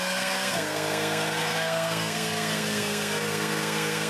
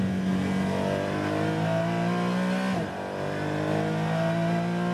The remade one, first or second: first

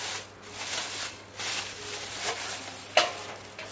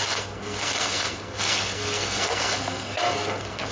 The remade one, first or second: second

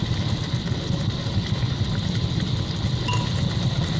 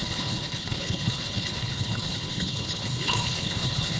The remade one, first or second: second